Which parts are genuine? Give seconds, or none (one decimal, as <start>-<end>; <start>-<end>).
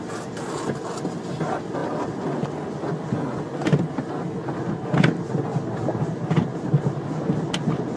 0.0-8.0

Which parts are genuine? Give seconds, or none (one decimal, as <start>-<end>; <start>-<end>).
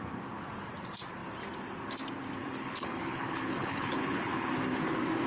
0.0-2.4; 4.5-5.3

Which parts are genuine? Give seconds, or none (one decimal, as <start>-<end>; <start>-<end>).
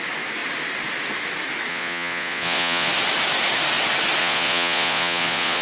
0.0-1.7; 2.9-4.2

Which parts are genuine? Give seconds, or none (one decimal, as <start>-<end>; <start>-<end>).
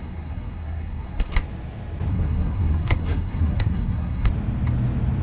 1.3-2.1; 4.3-5.2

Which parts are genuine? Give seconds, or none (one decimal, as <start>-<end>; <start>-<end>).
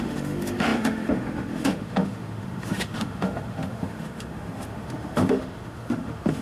none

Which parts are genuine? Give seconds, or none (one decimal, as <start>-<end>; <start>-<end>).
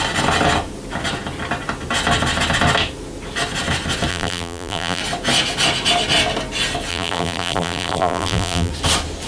0.0-4.1; 5.0-6.9; 8.7-9.3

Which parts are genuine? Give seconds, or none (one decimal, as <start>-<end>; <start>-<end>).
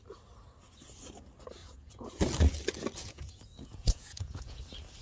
0.0-1.6; 2.1-3.0; 4.6-5.0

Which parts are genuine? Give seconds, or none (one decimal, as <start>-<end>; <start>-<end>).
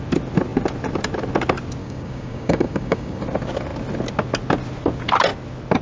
0.0-1.8; 3.2-5.8